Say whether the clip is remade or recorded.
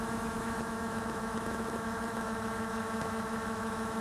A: remade